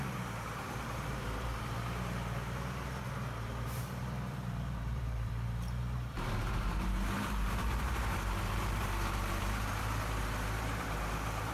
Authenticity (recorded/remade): remade